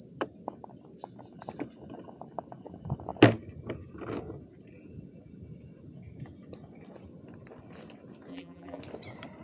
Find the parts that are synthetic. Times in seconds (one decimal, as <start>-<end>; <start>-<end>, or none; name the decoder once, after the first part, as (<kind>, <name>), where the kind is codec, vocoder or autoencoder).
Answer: 8.3-8.8 (vocoder, BigVGAN v2)